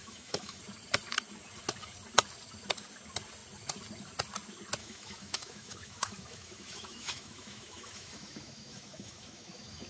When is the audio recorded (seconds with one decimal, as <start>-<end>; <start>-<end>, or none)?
0.6-4.8